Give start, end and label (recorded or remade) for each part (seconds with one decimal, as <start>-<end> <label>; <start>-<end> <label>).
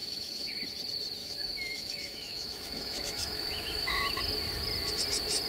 0.0-0.6 remade; 0.6-1.2 recorded; 1.2-4.2 remade; 4.2-5.5 recorded